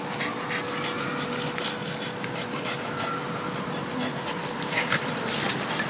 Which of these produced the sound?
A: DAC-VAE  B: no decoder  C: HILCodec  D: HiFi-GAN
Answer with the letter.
B